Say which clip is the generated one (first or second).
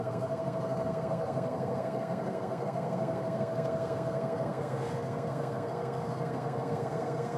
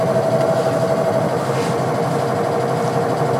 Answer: first